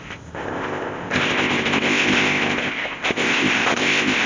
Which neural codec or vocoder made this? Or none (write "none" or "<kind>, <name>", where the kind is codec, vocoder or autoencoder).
codec, ZipCodec